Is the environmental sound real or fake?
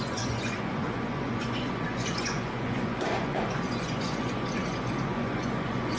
fake